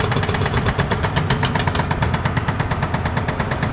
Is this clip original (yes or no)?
yes